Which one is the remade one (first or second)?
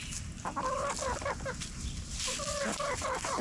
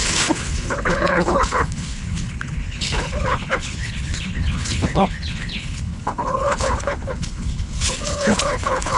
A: second